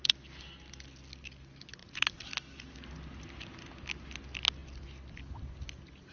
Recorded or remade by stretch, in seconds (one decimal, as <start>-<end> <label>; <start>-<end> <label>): 0.0-1.8 recorded; 1.8-2.3 remade; 2.3-6.1 recorded